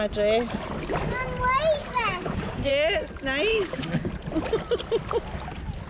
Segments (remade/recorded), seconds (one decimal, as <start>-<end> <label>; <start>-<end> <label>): 0.0-1.8 recorded; 1.8-2.7 remade; 2.7-3.5 recorded; 3.5-4.1 remade; 4.1-5.9 recorded